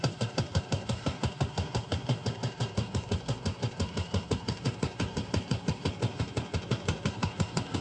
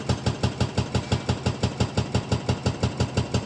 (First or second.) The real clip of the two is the second